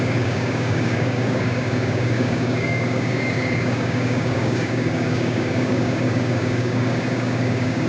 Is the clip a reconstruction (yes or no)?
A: yes